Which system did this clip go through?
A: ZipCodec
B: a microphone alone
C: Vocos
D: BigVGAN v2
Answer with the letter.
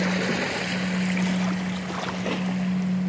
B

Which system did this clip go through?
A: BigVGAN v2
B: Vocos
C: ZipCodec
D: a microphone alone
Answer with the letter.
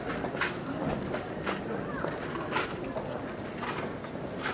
D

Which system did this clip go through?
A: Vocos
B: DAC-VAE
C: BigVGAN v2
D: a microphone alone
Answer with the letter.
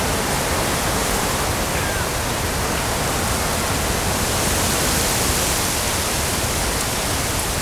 D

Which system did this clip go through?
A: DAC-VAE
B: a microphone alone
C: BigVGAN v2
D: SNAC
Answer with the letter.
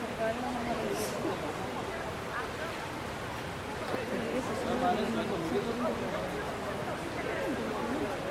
B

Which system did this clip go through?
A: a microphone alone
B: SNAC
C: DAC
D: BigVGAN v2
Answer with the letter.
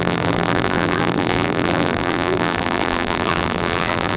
D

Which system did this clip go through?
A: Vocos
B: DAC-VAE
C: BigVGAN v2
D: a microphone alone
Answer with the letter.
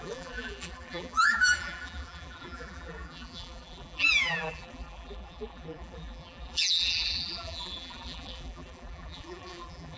C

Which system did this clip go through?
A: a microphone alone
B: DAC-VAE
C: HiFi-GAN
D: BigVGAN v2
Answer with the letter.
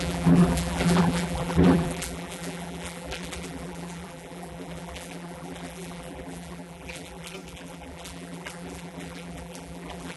D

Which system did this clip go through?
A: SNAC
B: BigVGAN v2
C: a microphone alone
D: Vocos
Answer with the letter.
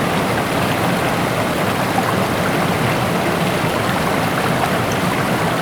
C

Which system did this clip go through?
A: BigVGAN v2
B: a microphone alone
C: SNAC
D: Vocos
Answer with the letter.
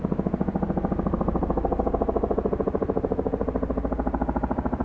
A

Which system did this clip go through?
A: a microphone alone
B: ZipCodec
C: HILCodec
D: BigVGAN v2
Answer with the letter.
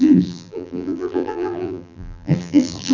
D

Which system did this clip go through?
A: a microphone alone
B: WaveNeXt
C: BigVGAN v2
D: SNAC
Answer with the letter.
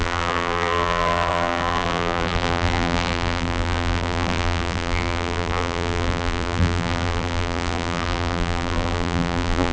C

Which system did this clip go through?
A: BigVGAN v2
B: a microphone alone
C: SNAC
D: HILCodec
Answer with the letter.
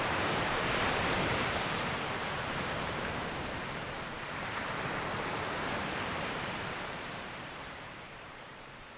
A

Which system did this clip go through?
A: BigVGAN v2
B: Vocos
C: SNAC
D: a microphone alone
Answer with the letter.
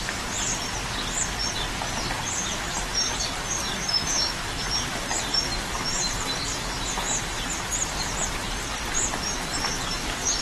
A